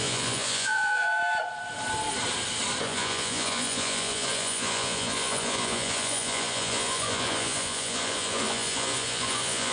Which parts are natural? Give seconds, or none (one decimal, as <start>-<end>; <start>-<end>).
1.2-2.8